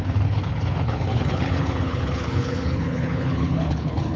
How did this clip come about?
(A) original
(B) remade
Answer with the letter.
B